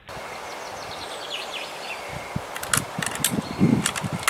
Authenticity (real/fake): real